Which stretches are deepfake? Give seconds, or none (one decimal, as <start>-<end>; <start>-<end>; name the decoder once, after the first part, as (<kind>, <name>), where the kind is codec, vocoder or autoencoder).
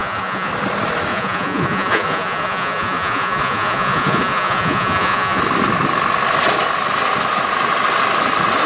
0.0-0.5 (vocoder, Vocos); 1.1-5.4